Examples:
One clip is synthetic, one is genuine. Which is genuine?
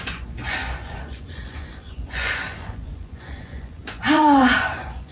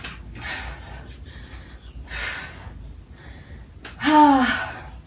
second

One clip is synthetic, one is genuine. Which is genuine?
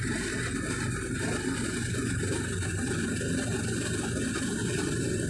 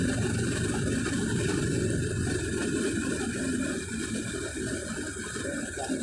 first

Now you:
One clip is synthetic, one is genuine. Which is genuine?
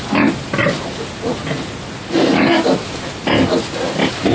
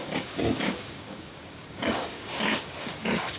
first